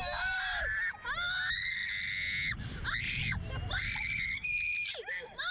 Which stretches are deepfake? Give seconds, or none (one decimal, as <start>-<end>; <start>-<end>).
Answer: none

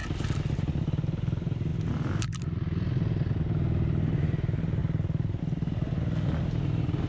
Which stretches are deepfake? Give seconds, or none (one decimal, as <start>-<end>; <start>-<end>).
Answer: none

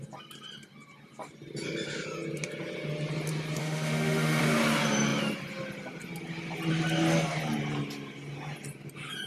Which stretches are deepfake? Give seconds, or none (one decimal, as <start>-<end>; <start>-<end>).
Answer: 3.6-4.4

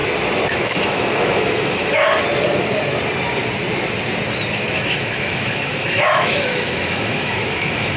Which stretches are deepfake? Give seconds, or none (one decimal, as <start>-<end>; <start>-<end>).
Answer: 0.5-2.0; 4.7-8.0